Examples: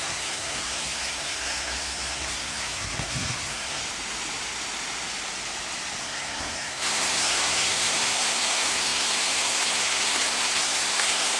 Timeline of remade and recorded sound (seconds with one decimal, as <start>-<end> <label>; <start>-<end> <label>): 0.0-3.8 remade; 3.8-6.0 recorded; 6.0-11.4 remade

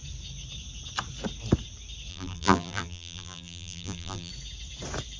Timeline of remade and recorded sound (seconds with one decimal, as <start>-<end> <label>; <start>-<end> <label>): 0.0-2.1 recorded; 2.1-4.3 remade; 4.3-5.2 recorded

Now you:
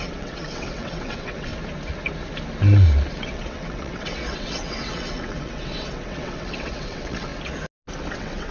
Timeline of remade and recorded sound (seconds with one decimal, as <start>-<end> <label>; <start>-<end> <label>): 0.0-1.5 remade; 1.5-3.1 recorded; 3.1-7.3 remade; 7.3-8.1 recorded; 8.1-8.5 remade

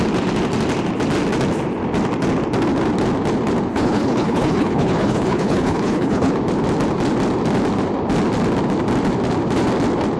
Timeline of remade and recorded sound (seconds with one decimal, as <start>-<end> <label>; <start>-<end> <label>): 0.0-3.7 recorded; 3.7-6.3 remade; 6.3-10.2 recorded

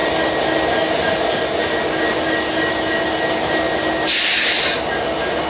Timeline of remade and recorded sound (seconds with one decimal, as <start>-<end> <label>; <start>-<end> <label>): 0.0-5.5 recorded

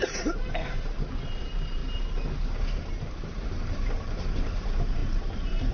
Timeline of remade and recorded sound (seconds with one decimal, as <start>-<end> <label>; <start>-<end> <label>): 0.0-1.8 remade; 1.8-3.1 recorded; 3.1-5.7 remade